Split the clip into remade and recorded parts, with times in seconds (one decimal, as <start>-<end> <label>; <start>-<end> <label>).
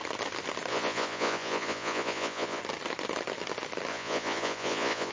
0.0-0.7 recorded; 0.7-2.6 remade; 2.6-3.9 recorded; 3.9-5.1 remade